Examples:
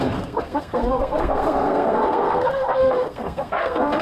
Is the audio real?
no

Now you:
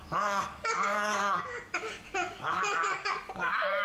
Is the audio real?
no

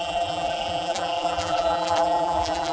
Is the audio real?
no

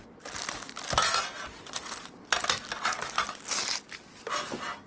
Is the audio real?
yes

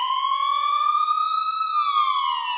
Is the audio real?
yes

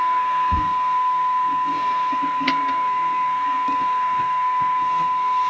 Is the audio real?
no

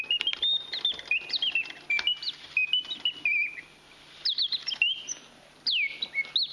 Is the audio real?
yes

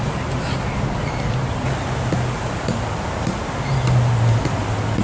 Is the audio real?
yes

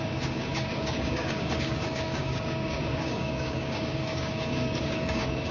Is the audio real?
no